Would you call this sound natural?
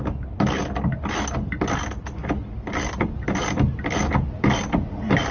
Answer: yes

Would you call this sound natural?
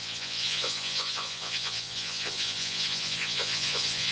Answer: no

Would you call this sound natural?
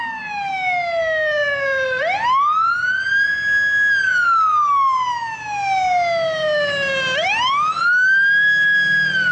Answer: yes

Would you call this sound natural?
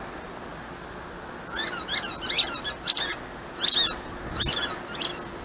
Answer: yes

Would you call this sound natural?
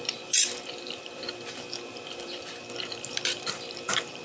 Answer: no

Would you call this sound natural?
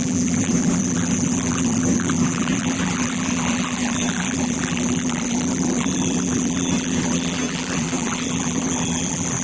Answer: no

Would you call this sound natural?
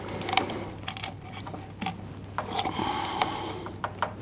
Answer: yes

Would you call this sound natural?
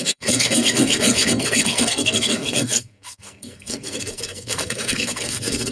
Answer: no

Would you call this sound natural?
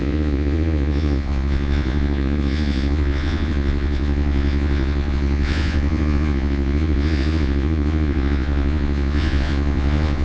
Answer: no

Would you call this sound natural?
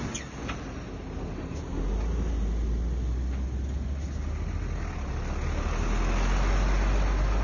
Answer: yes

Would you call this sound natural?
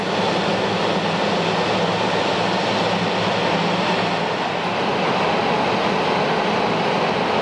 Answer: yes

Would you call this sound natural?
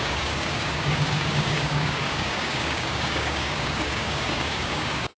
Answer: no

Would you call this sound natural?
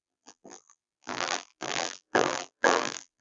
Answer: no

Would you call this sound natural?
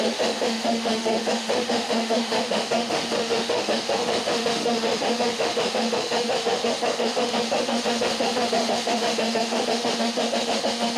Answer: no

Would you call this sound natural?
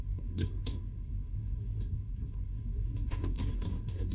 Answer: no